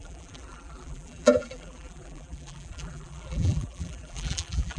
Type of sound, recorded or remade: remade